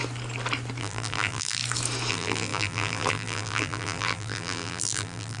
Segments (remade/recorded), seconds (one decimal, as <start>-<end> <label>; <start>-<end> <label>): 0.0-0.8 recorded; 0.8-1.6 remade; 1.6-2.1 recorded; 2.1-5.4 remade

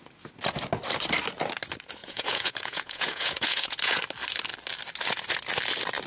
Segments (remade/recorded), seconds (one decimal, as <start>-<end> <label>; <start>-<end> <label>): 0.0-2.0 recorded; 2.0-4.0 remade; 4.0-6.1 recorded

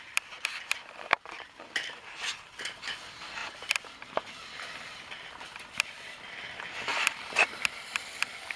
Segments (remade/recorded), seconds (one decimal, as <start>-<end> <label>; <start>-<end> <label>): 0.0-8.6 remade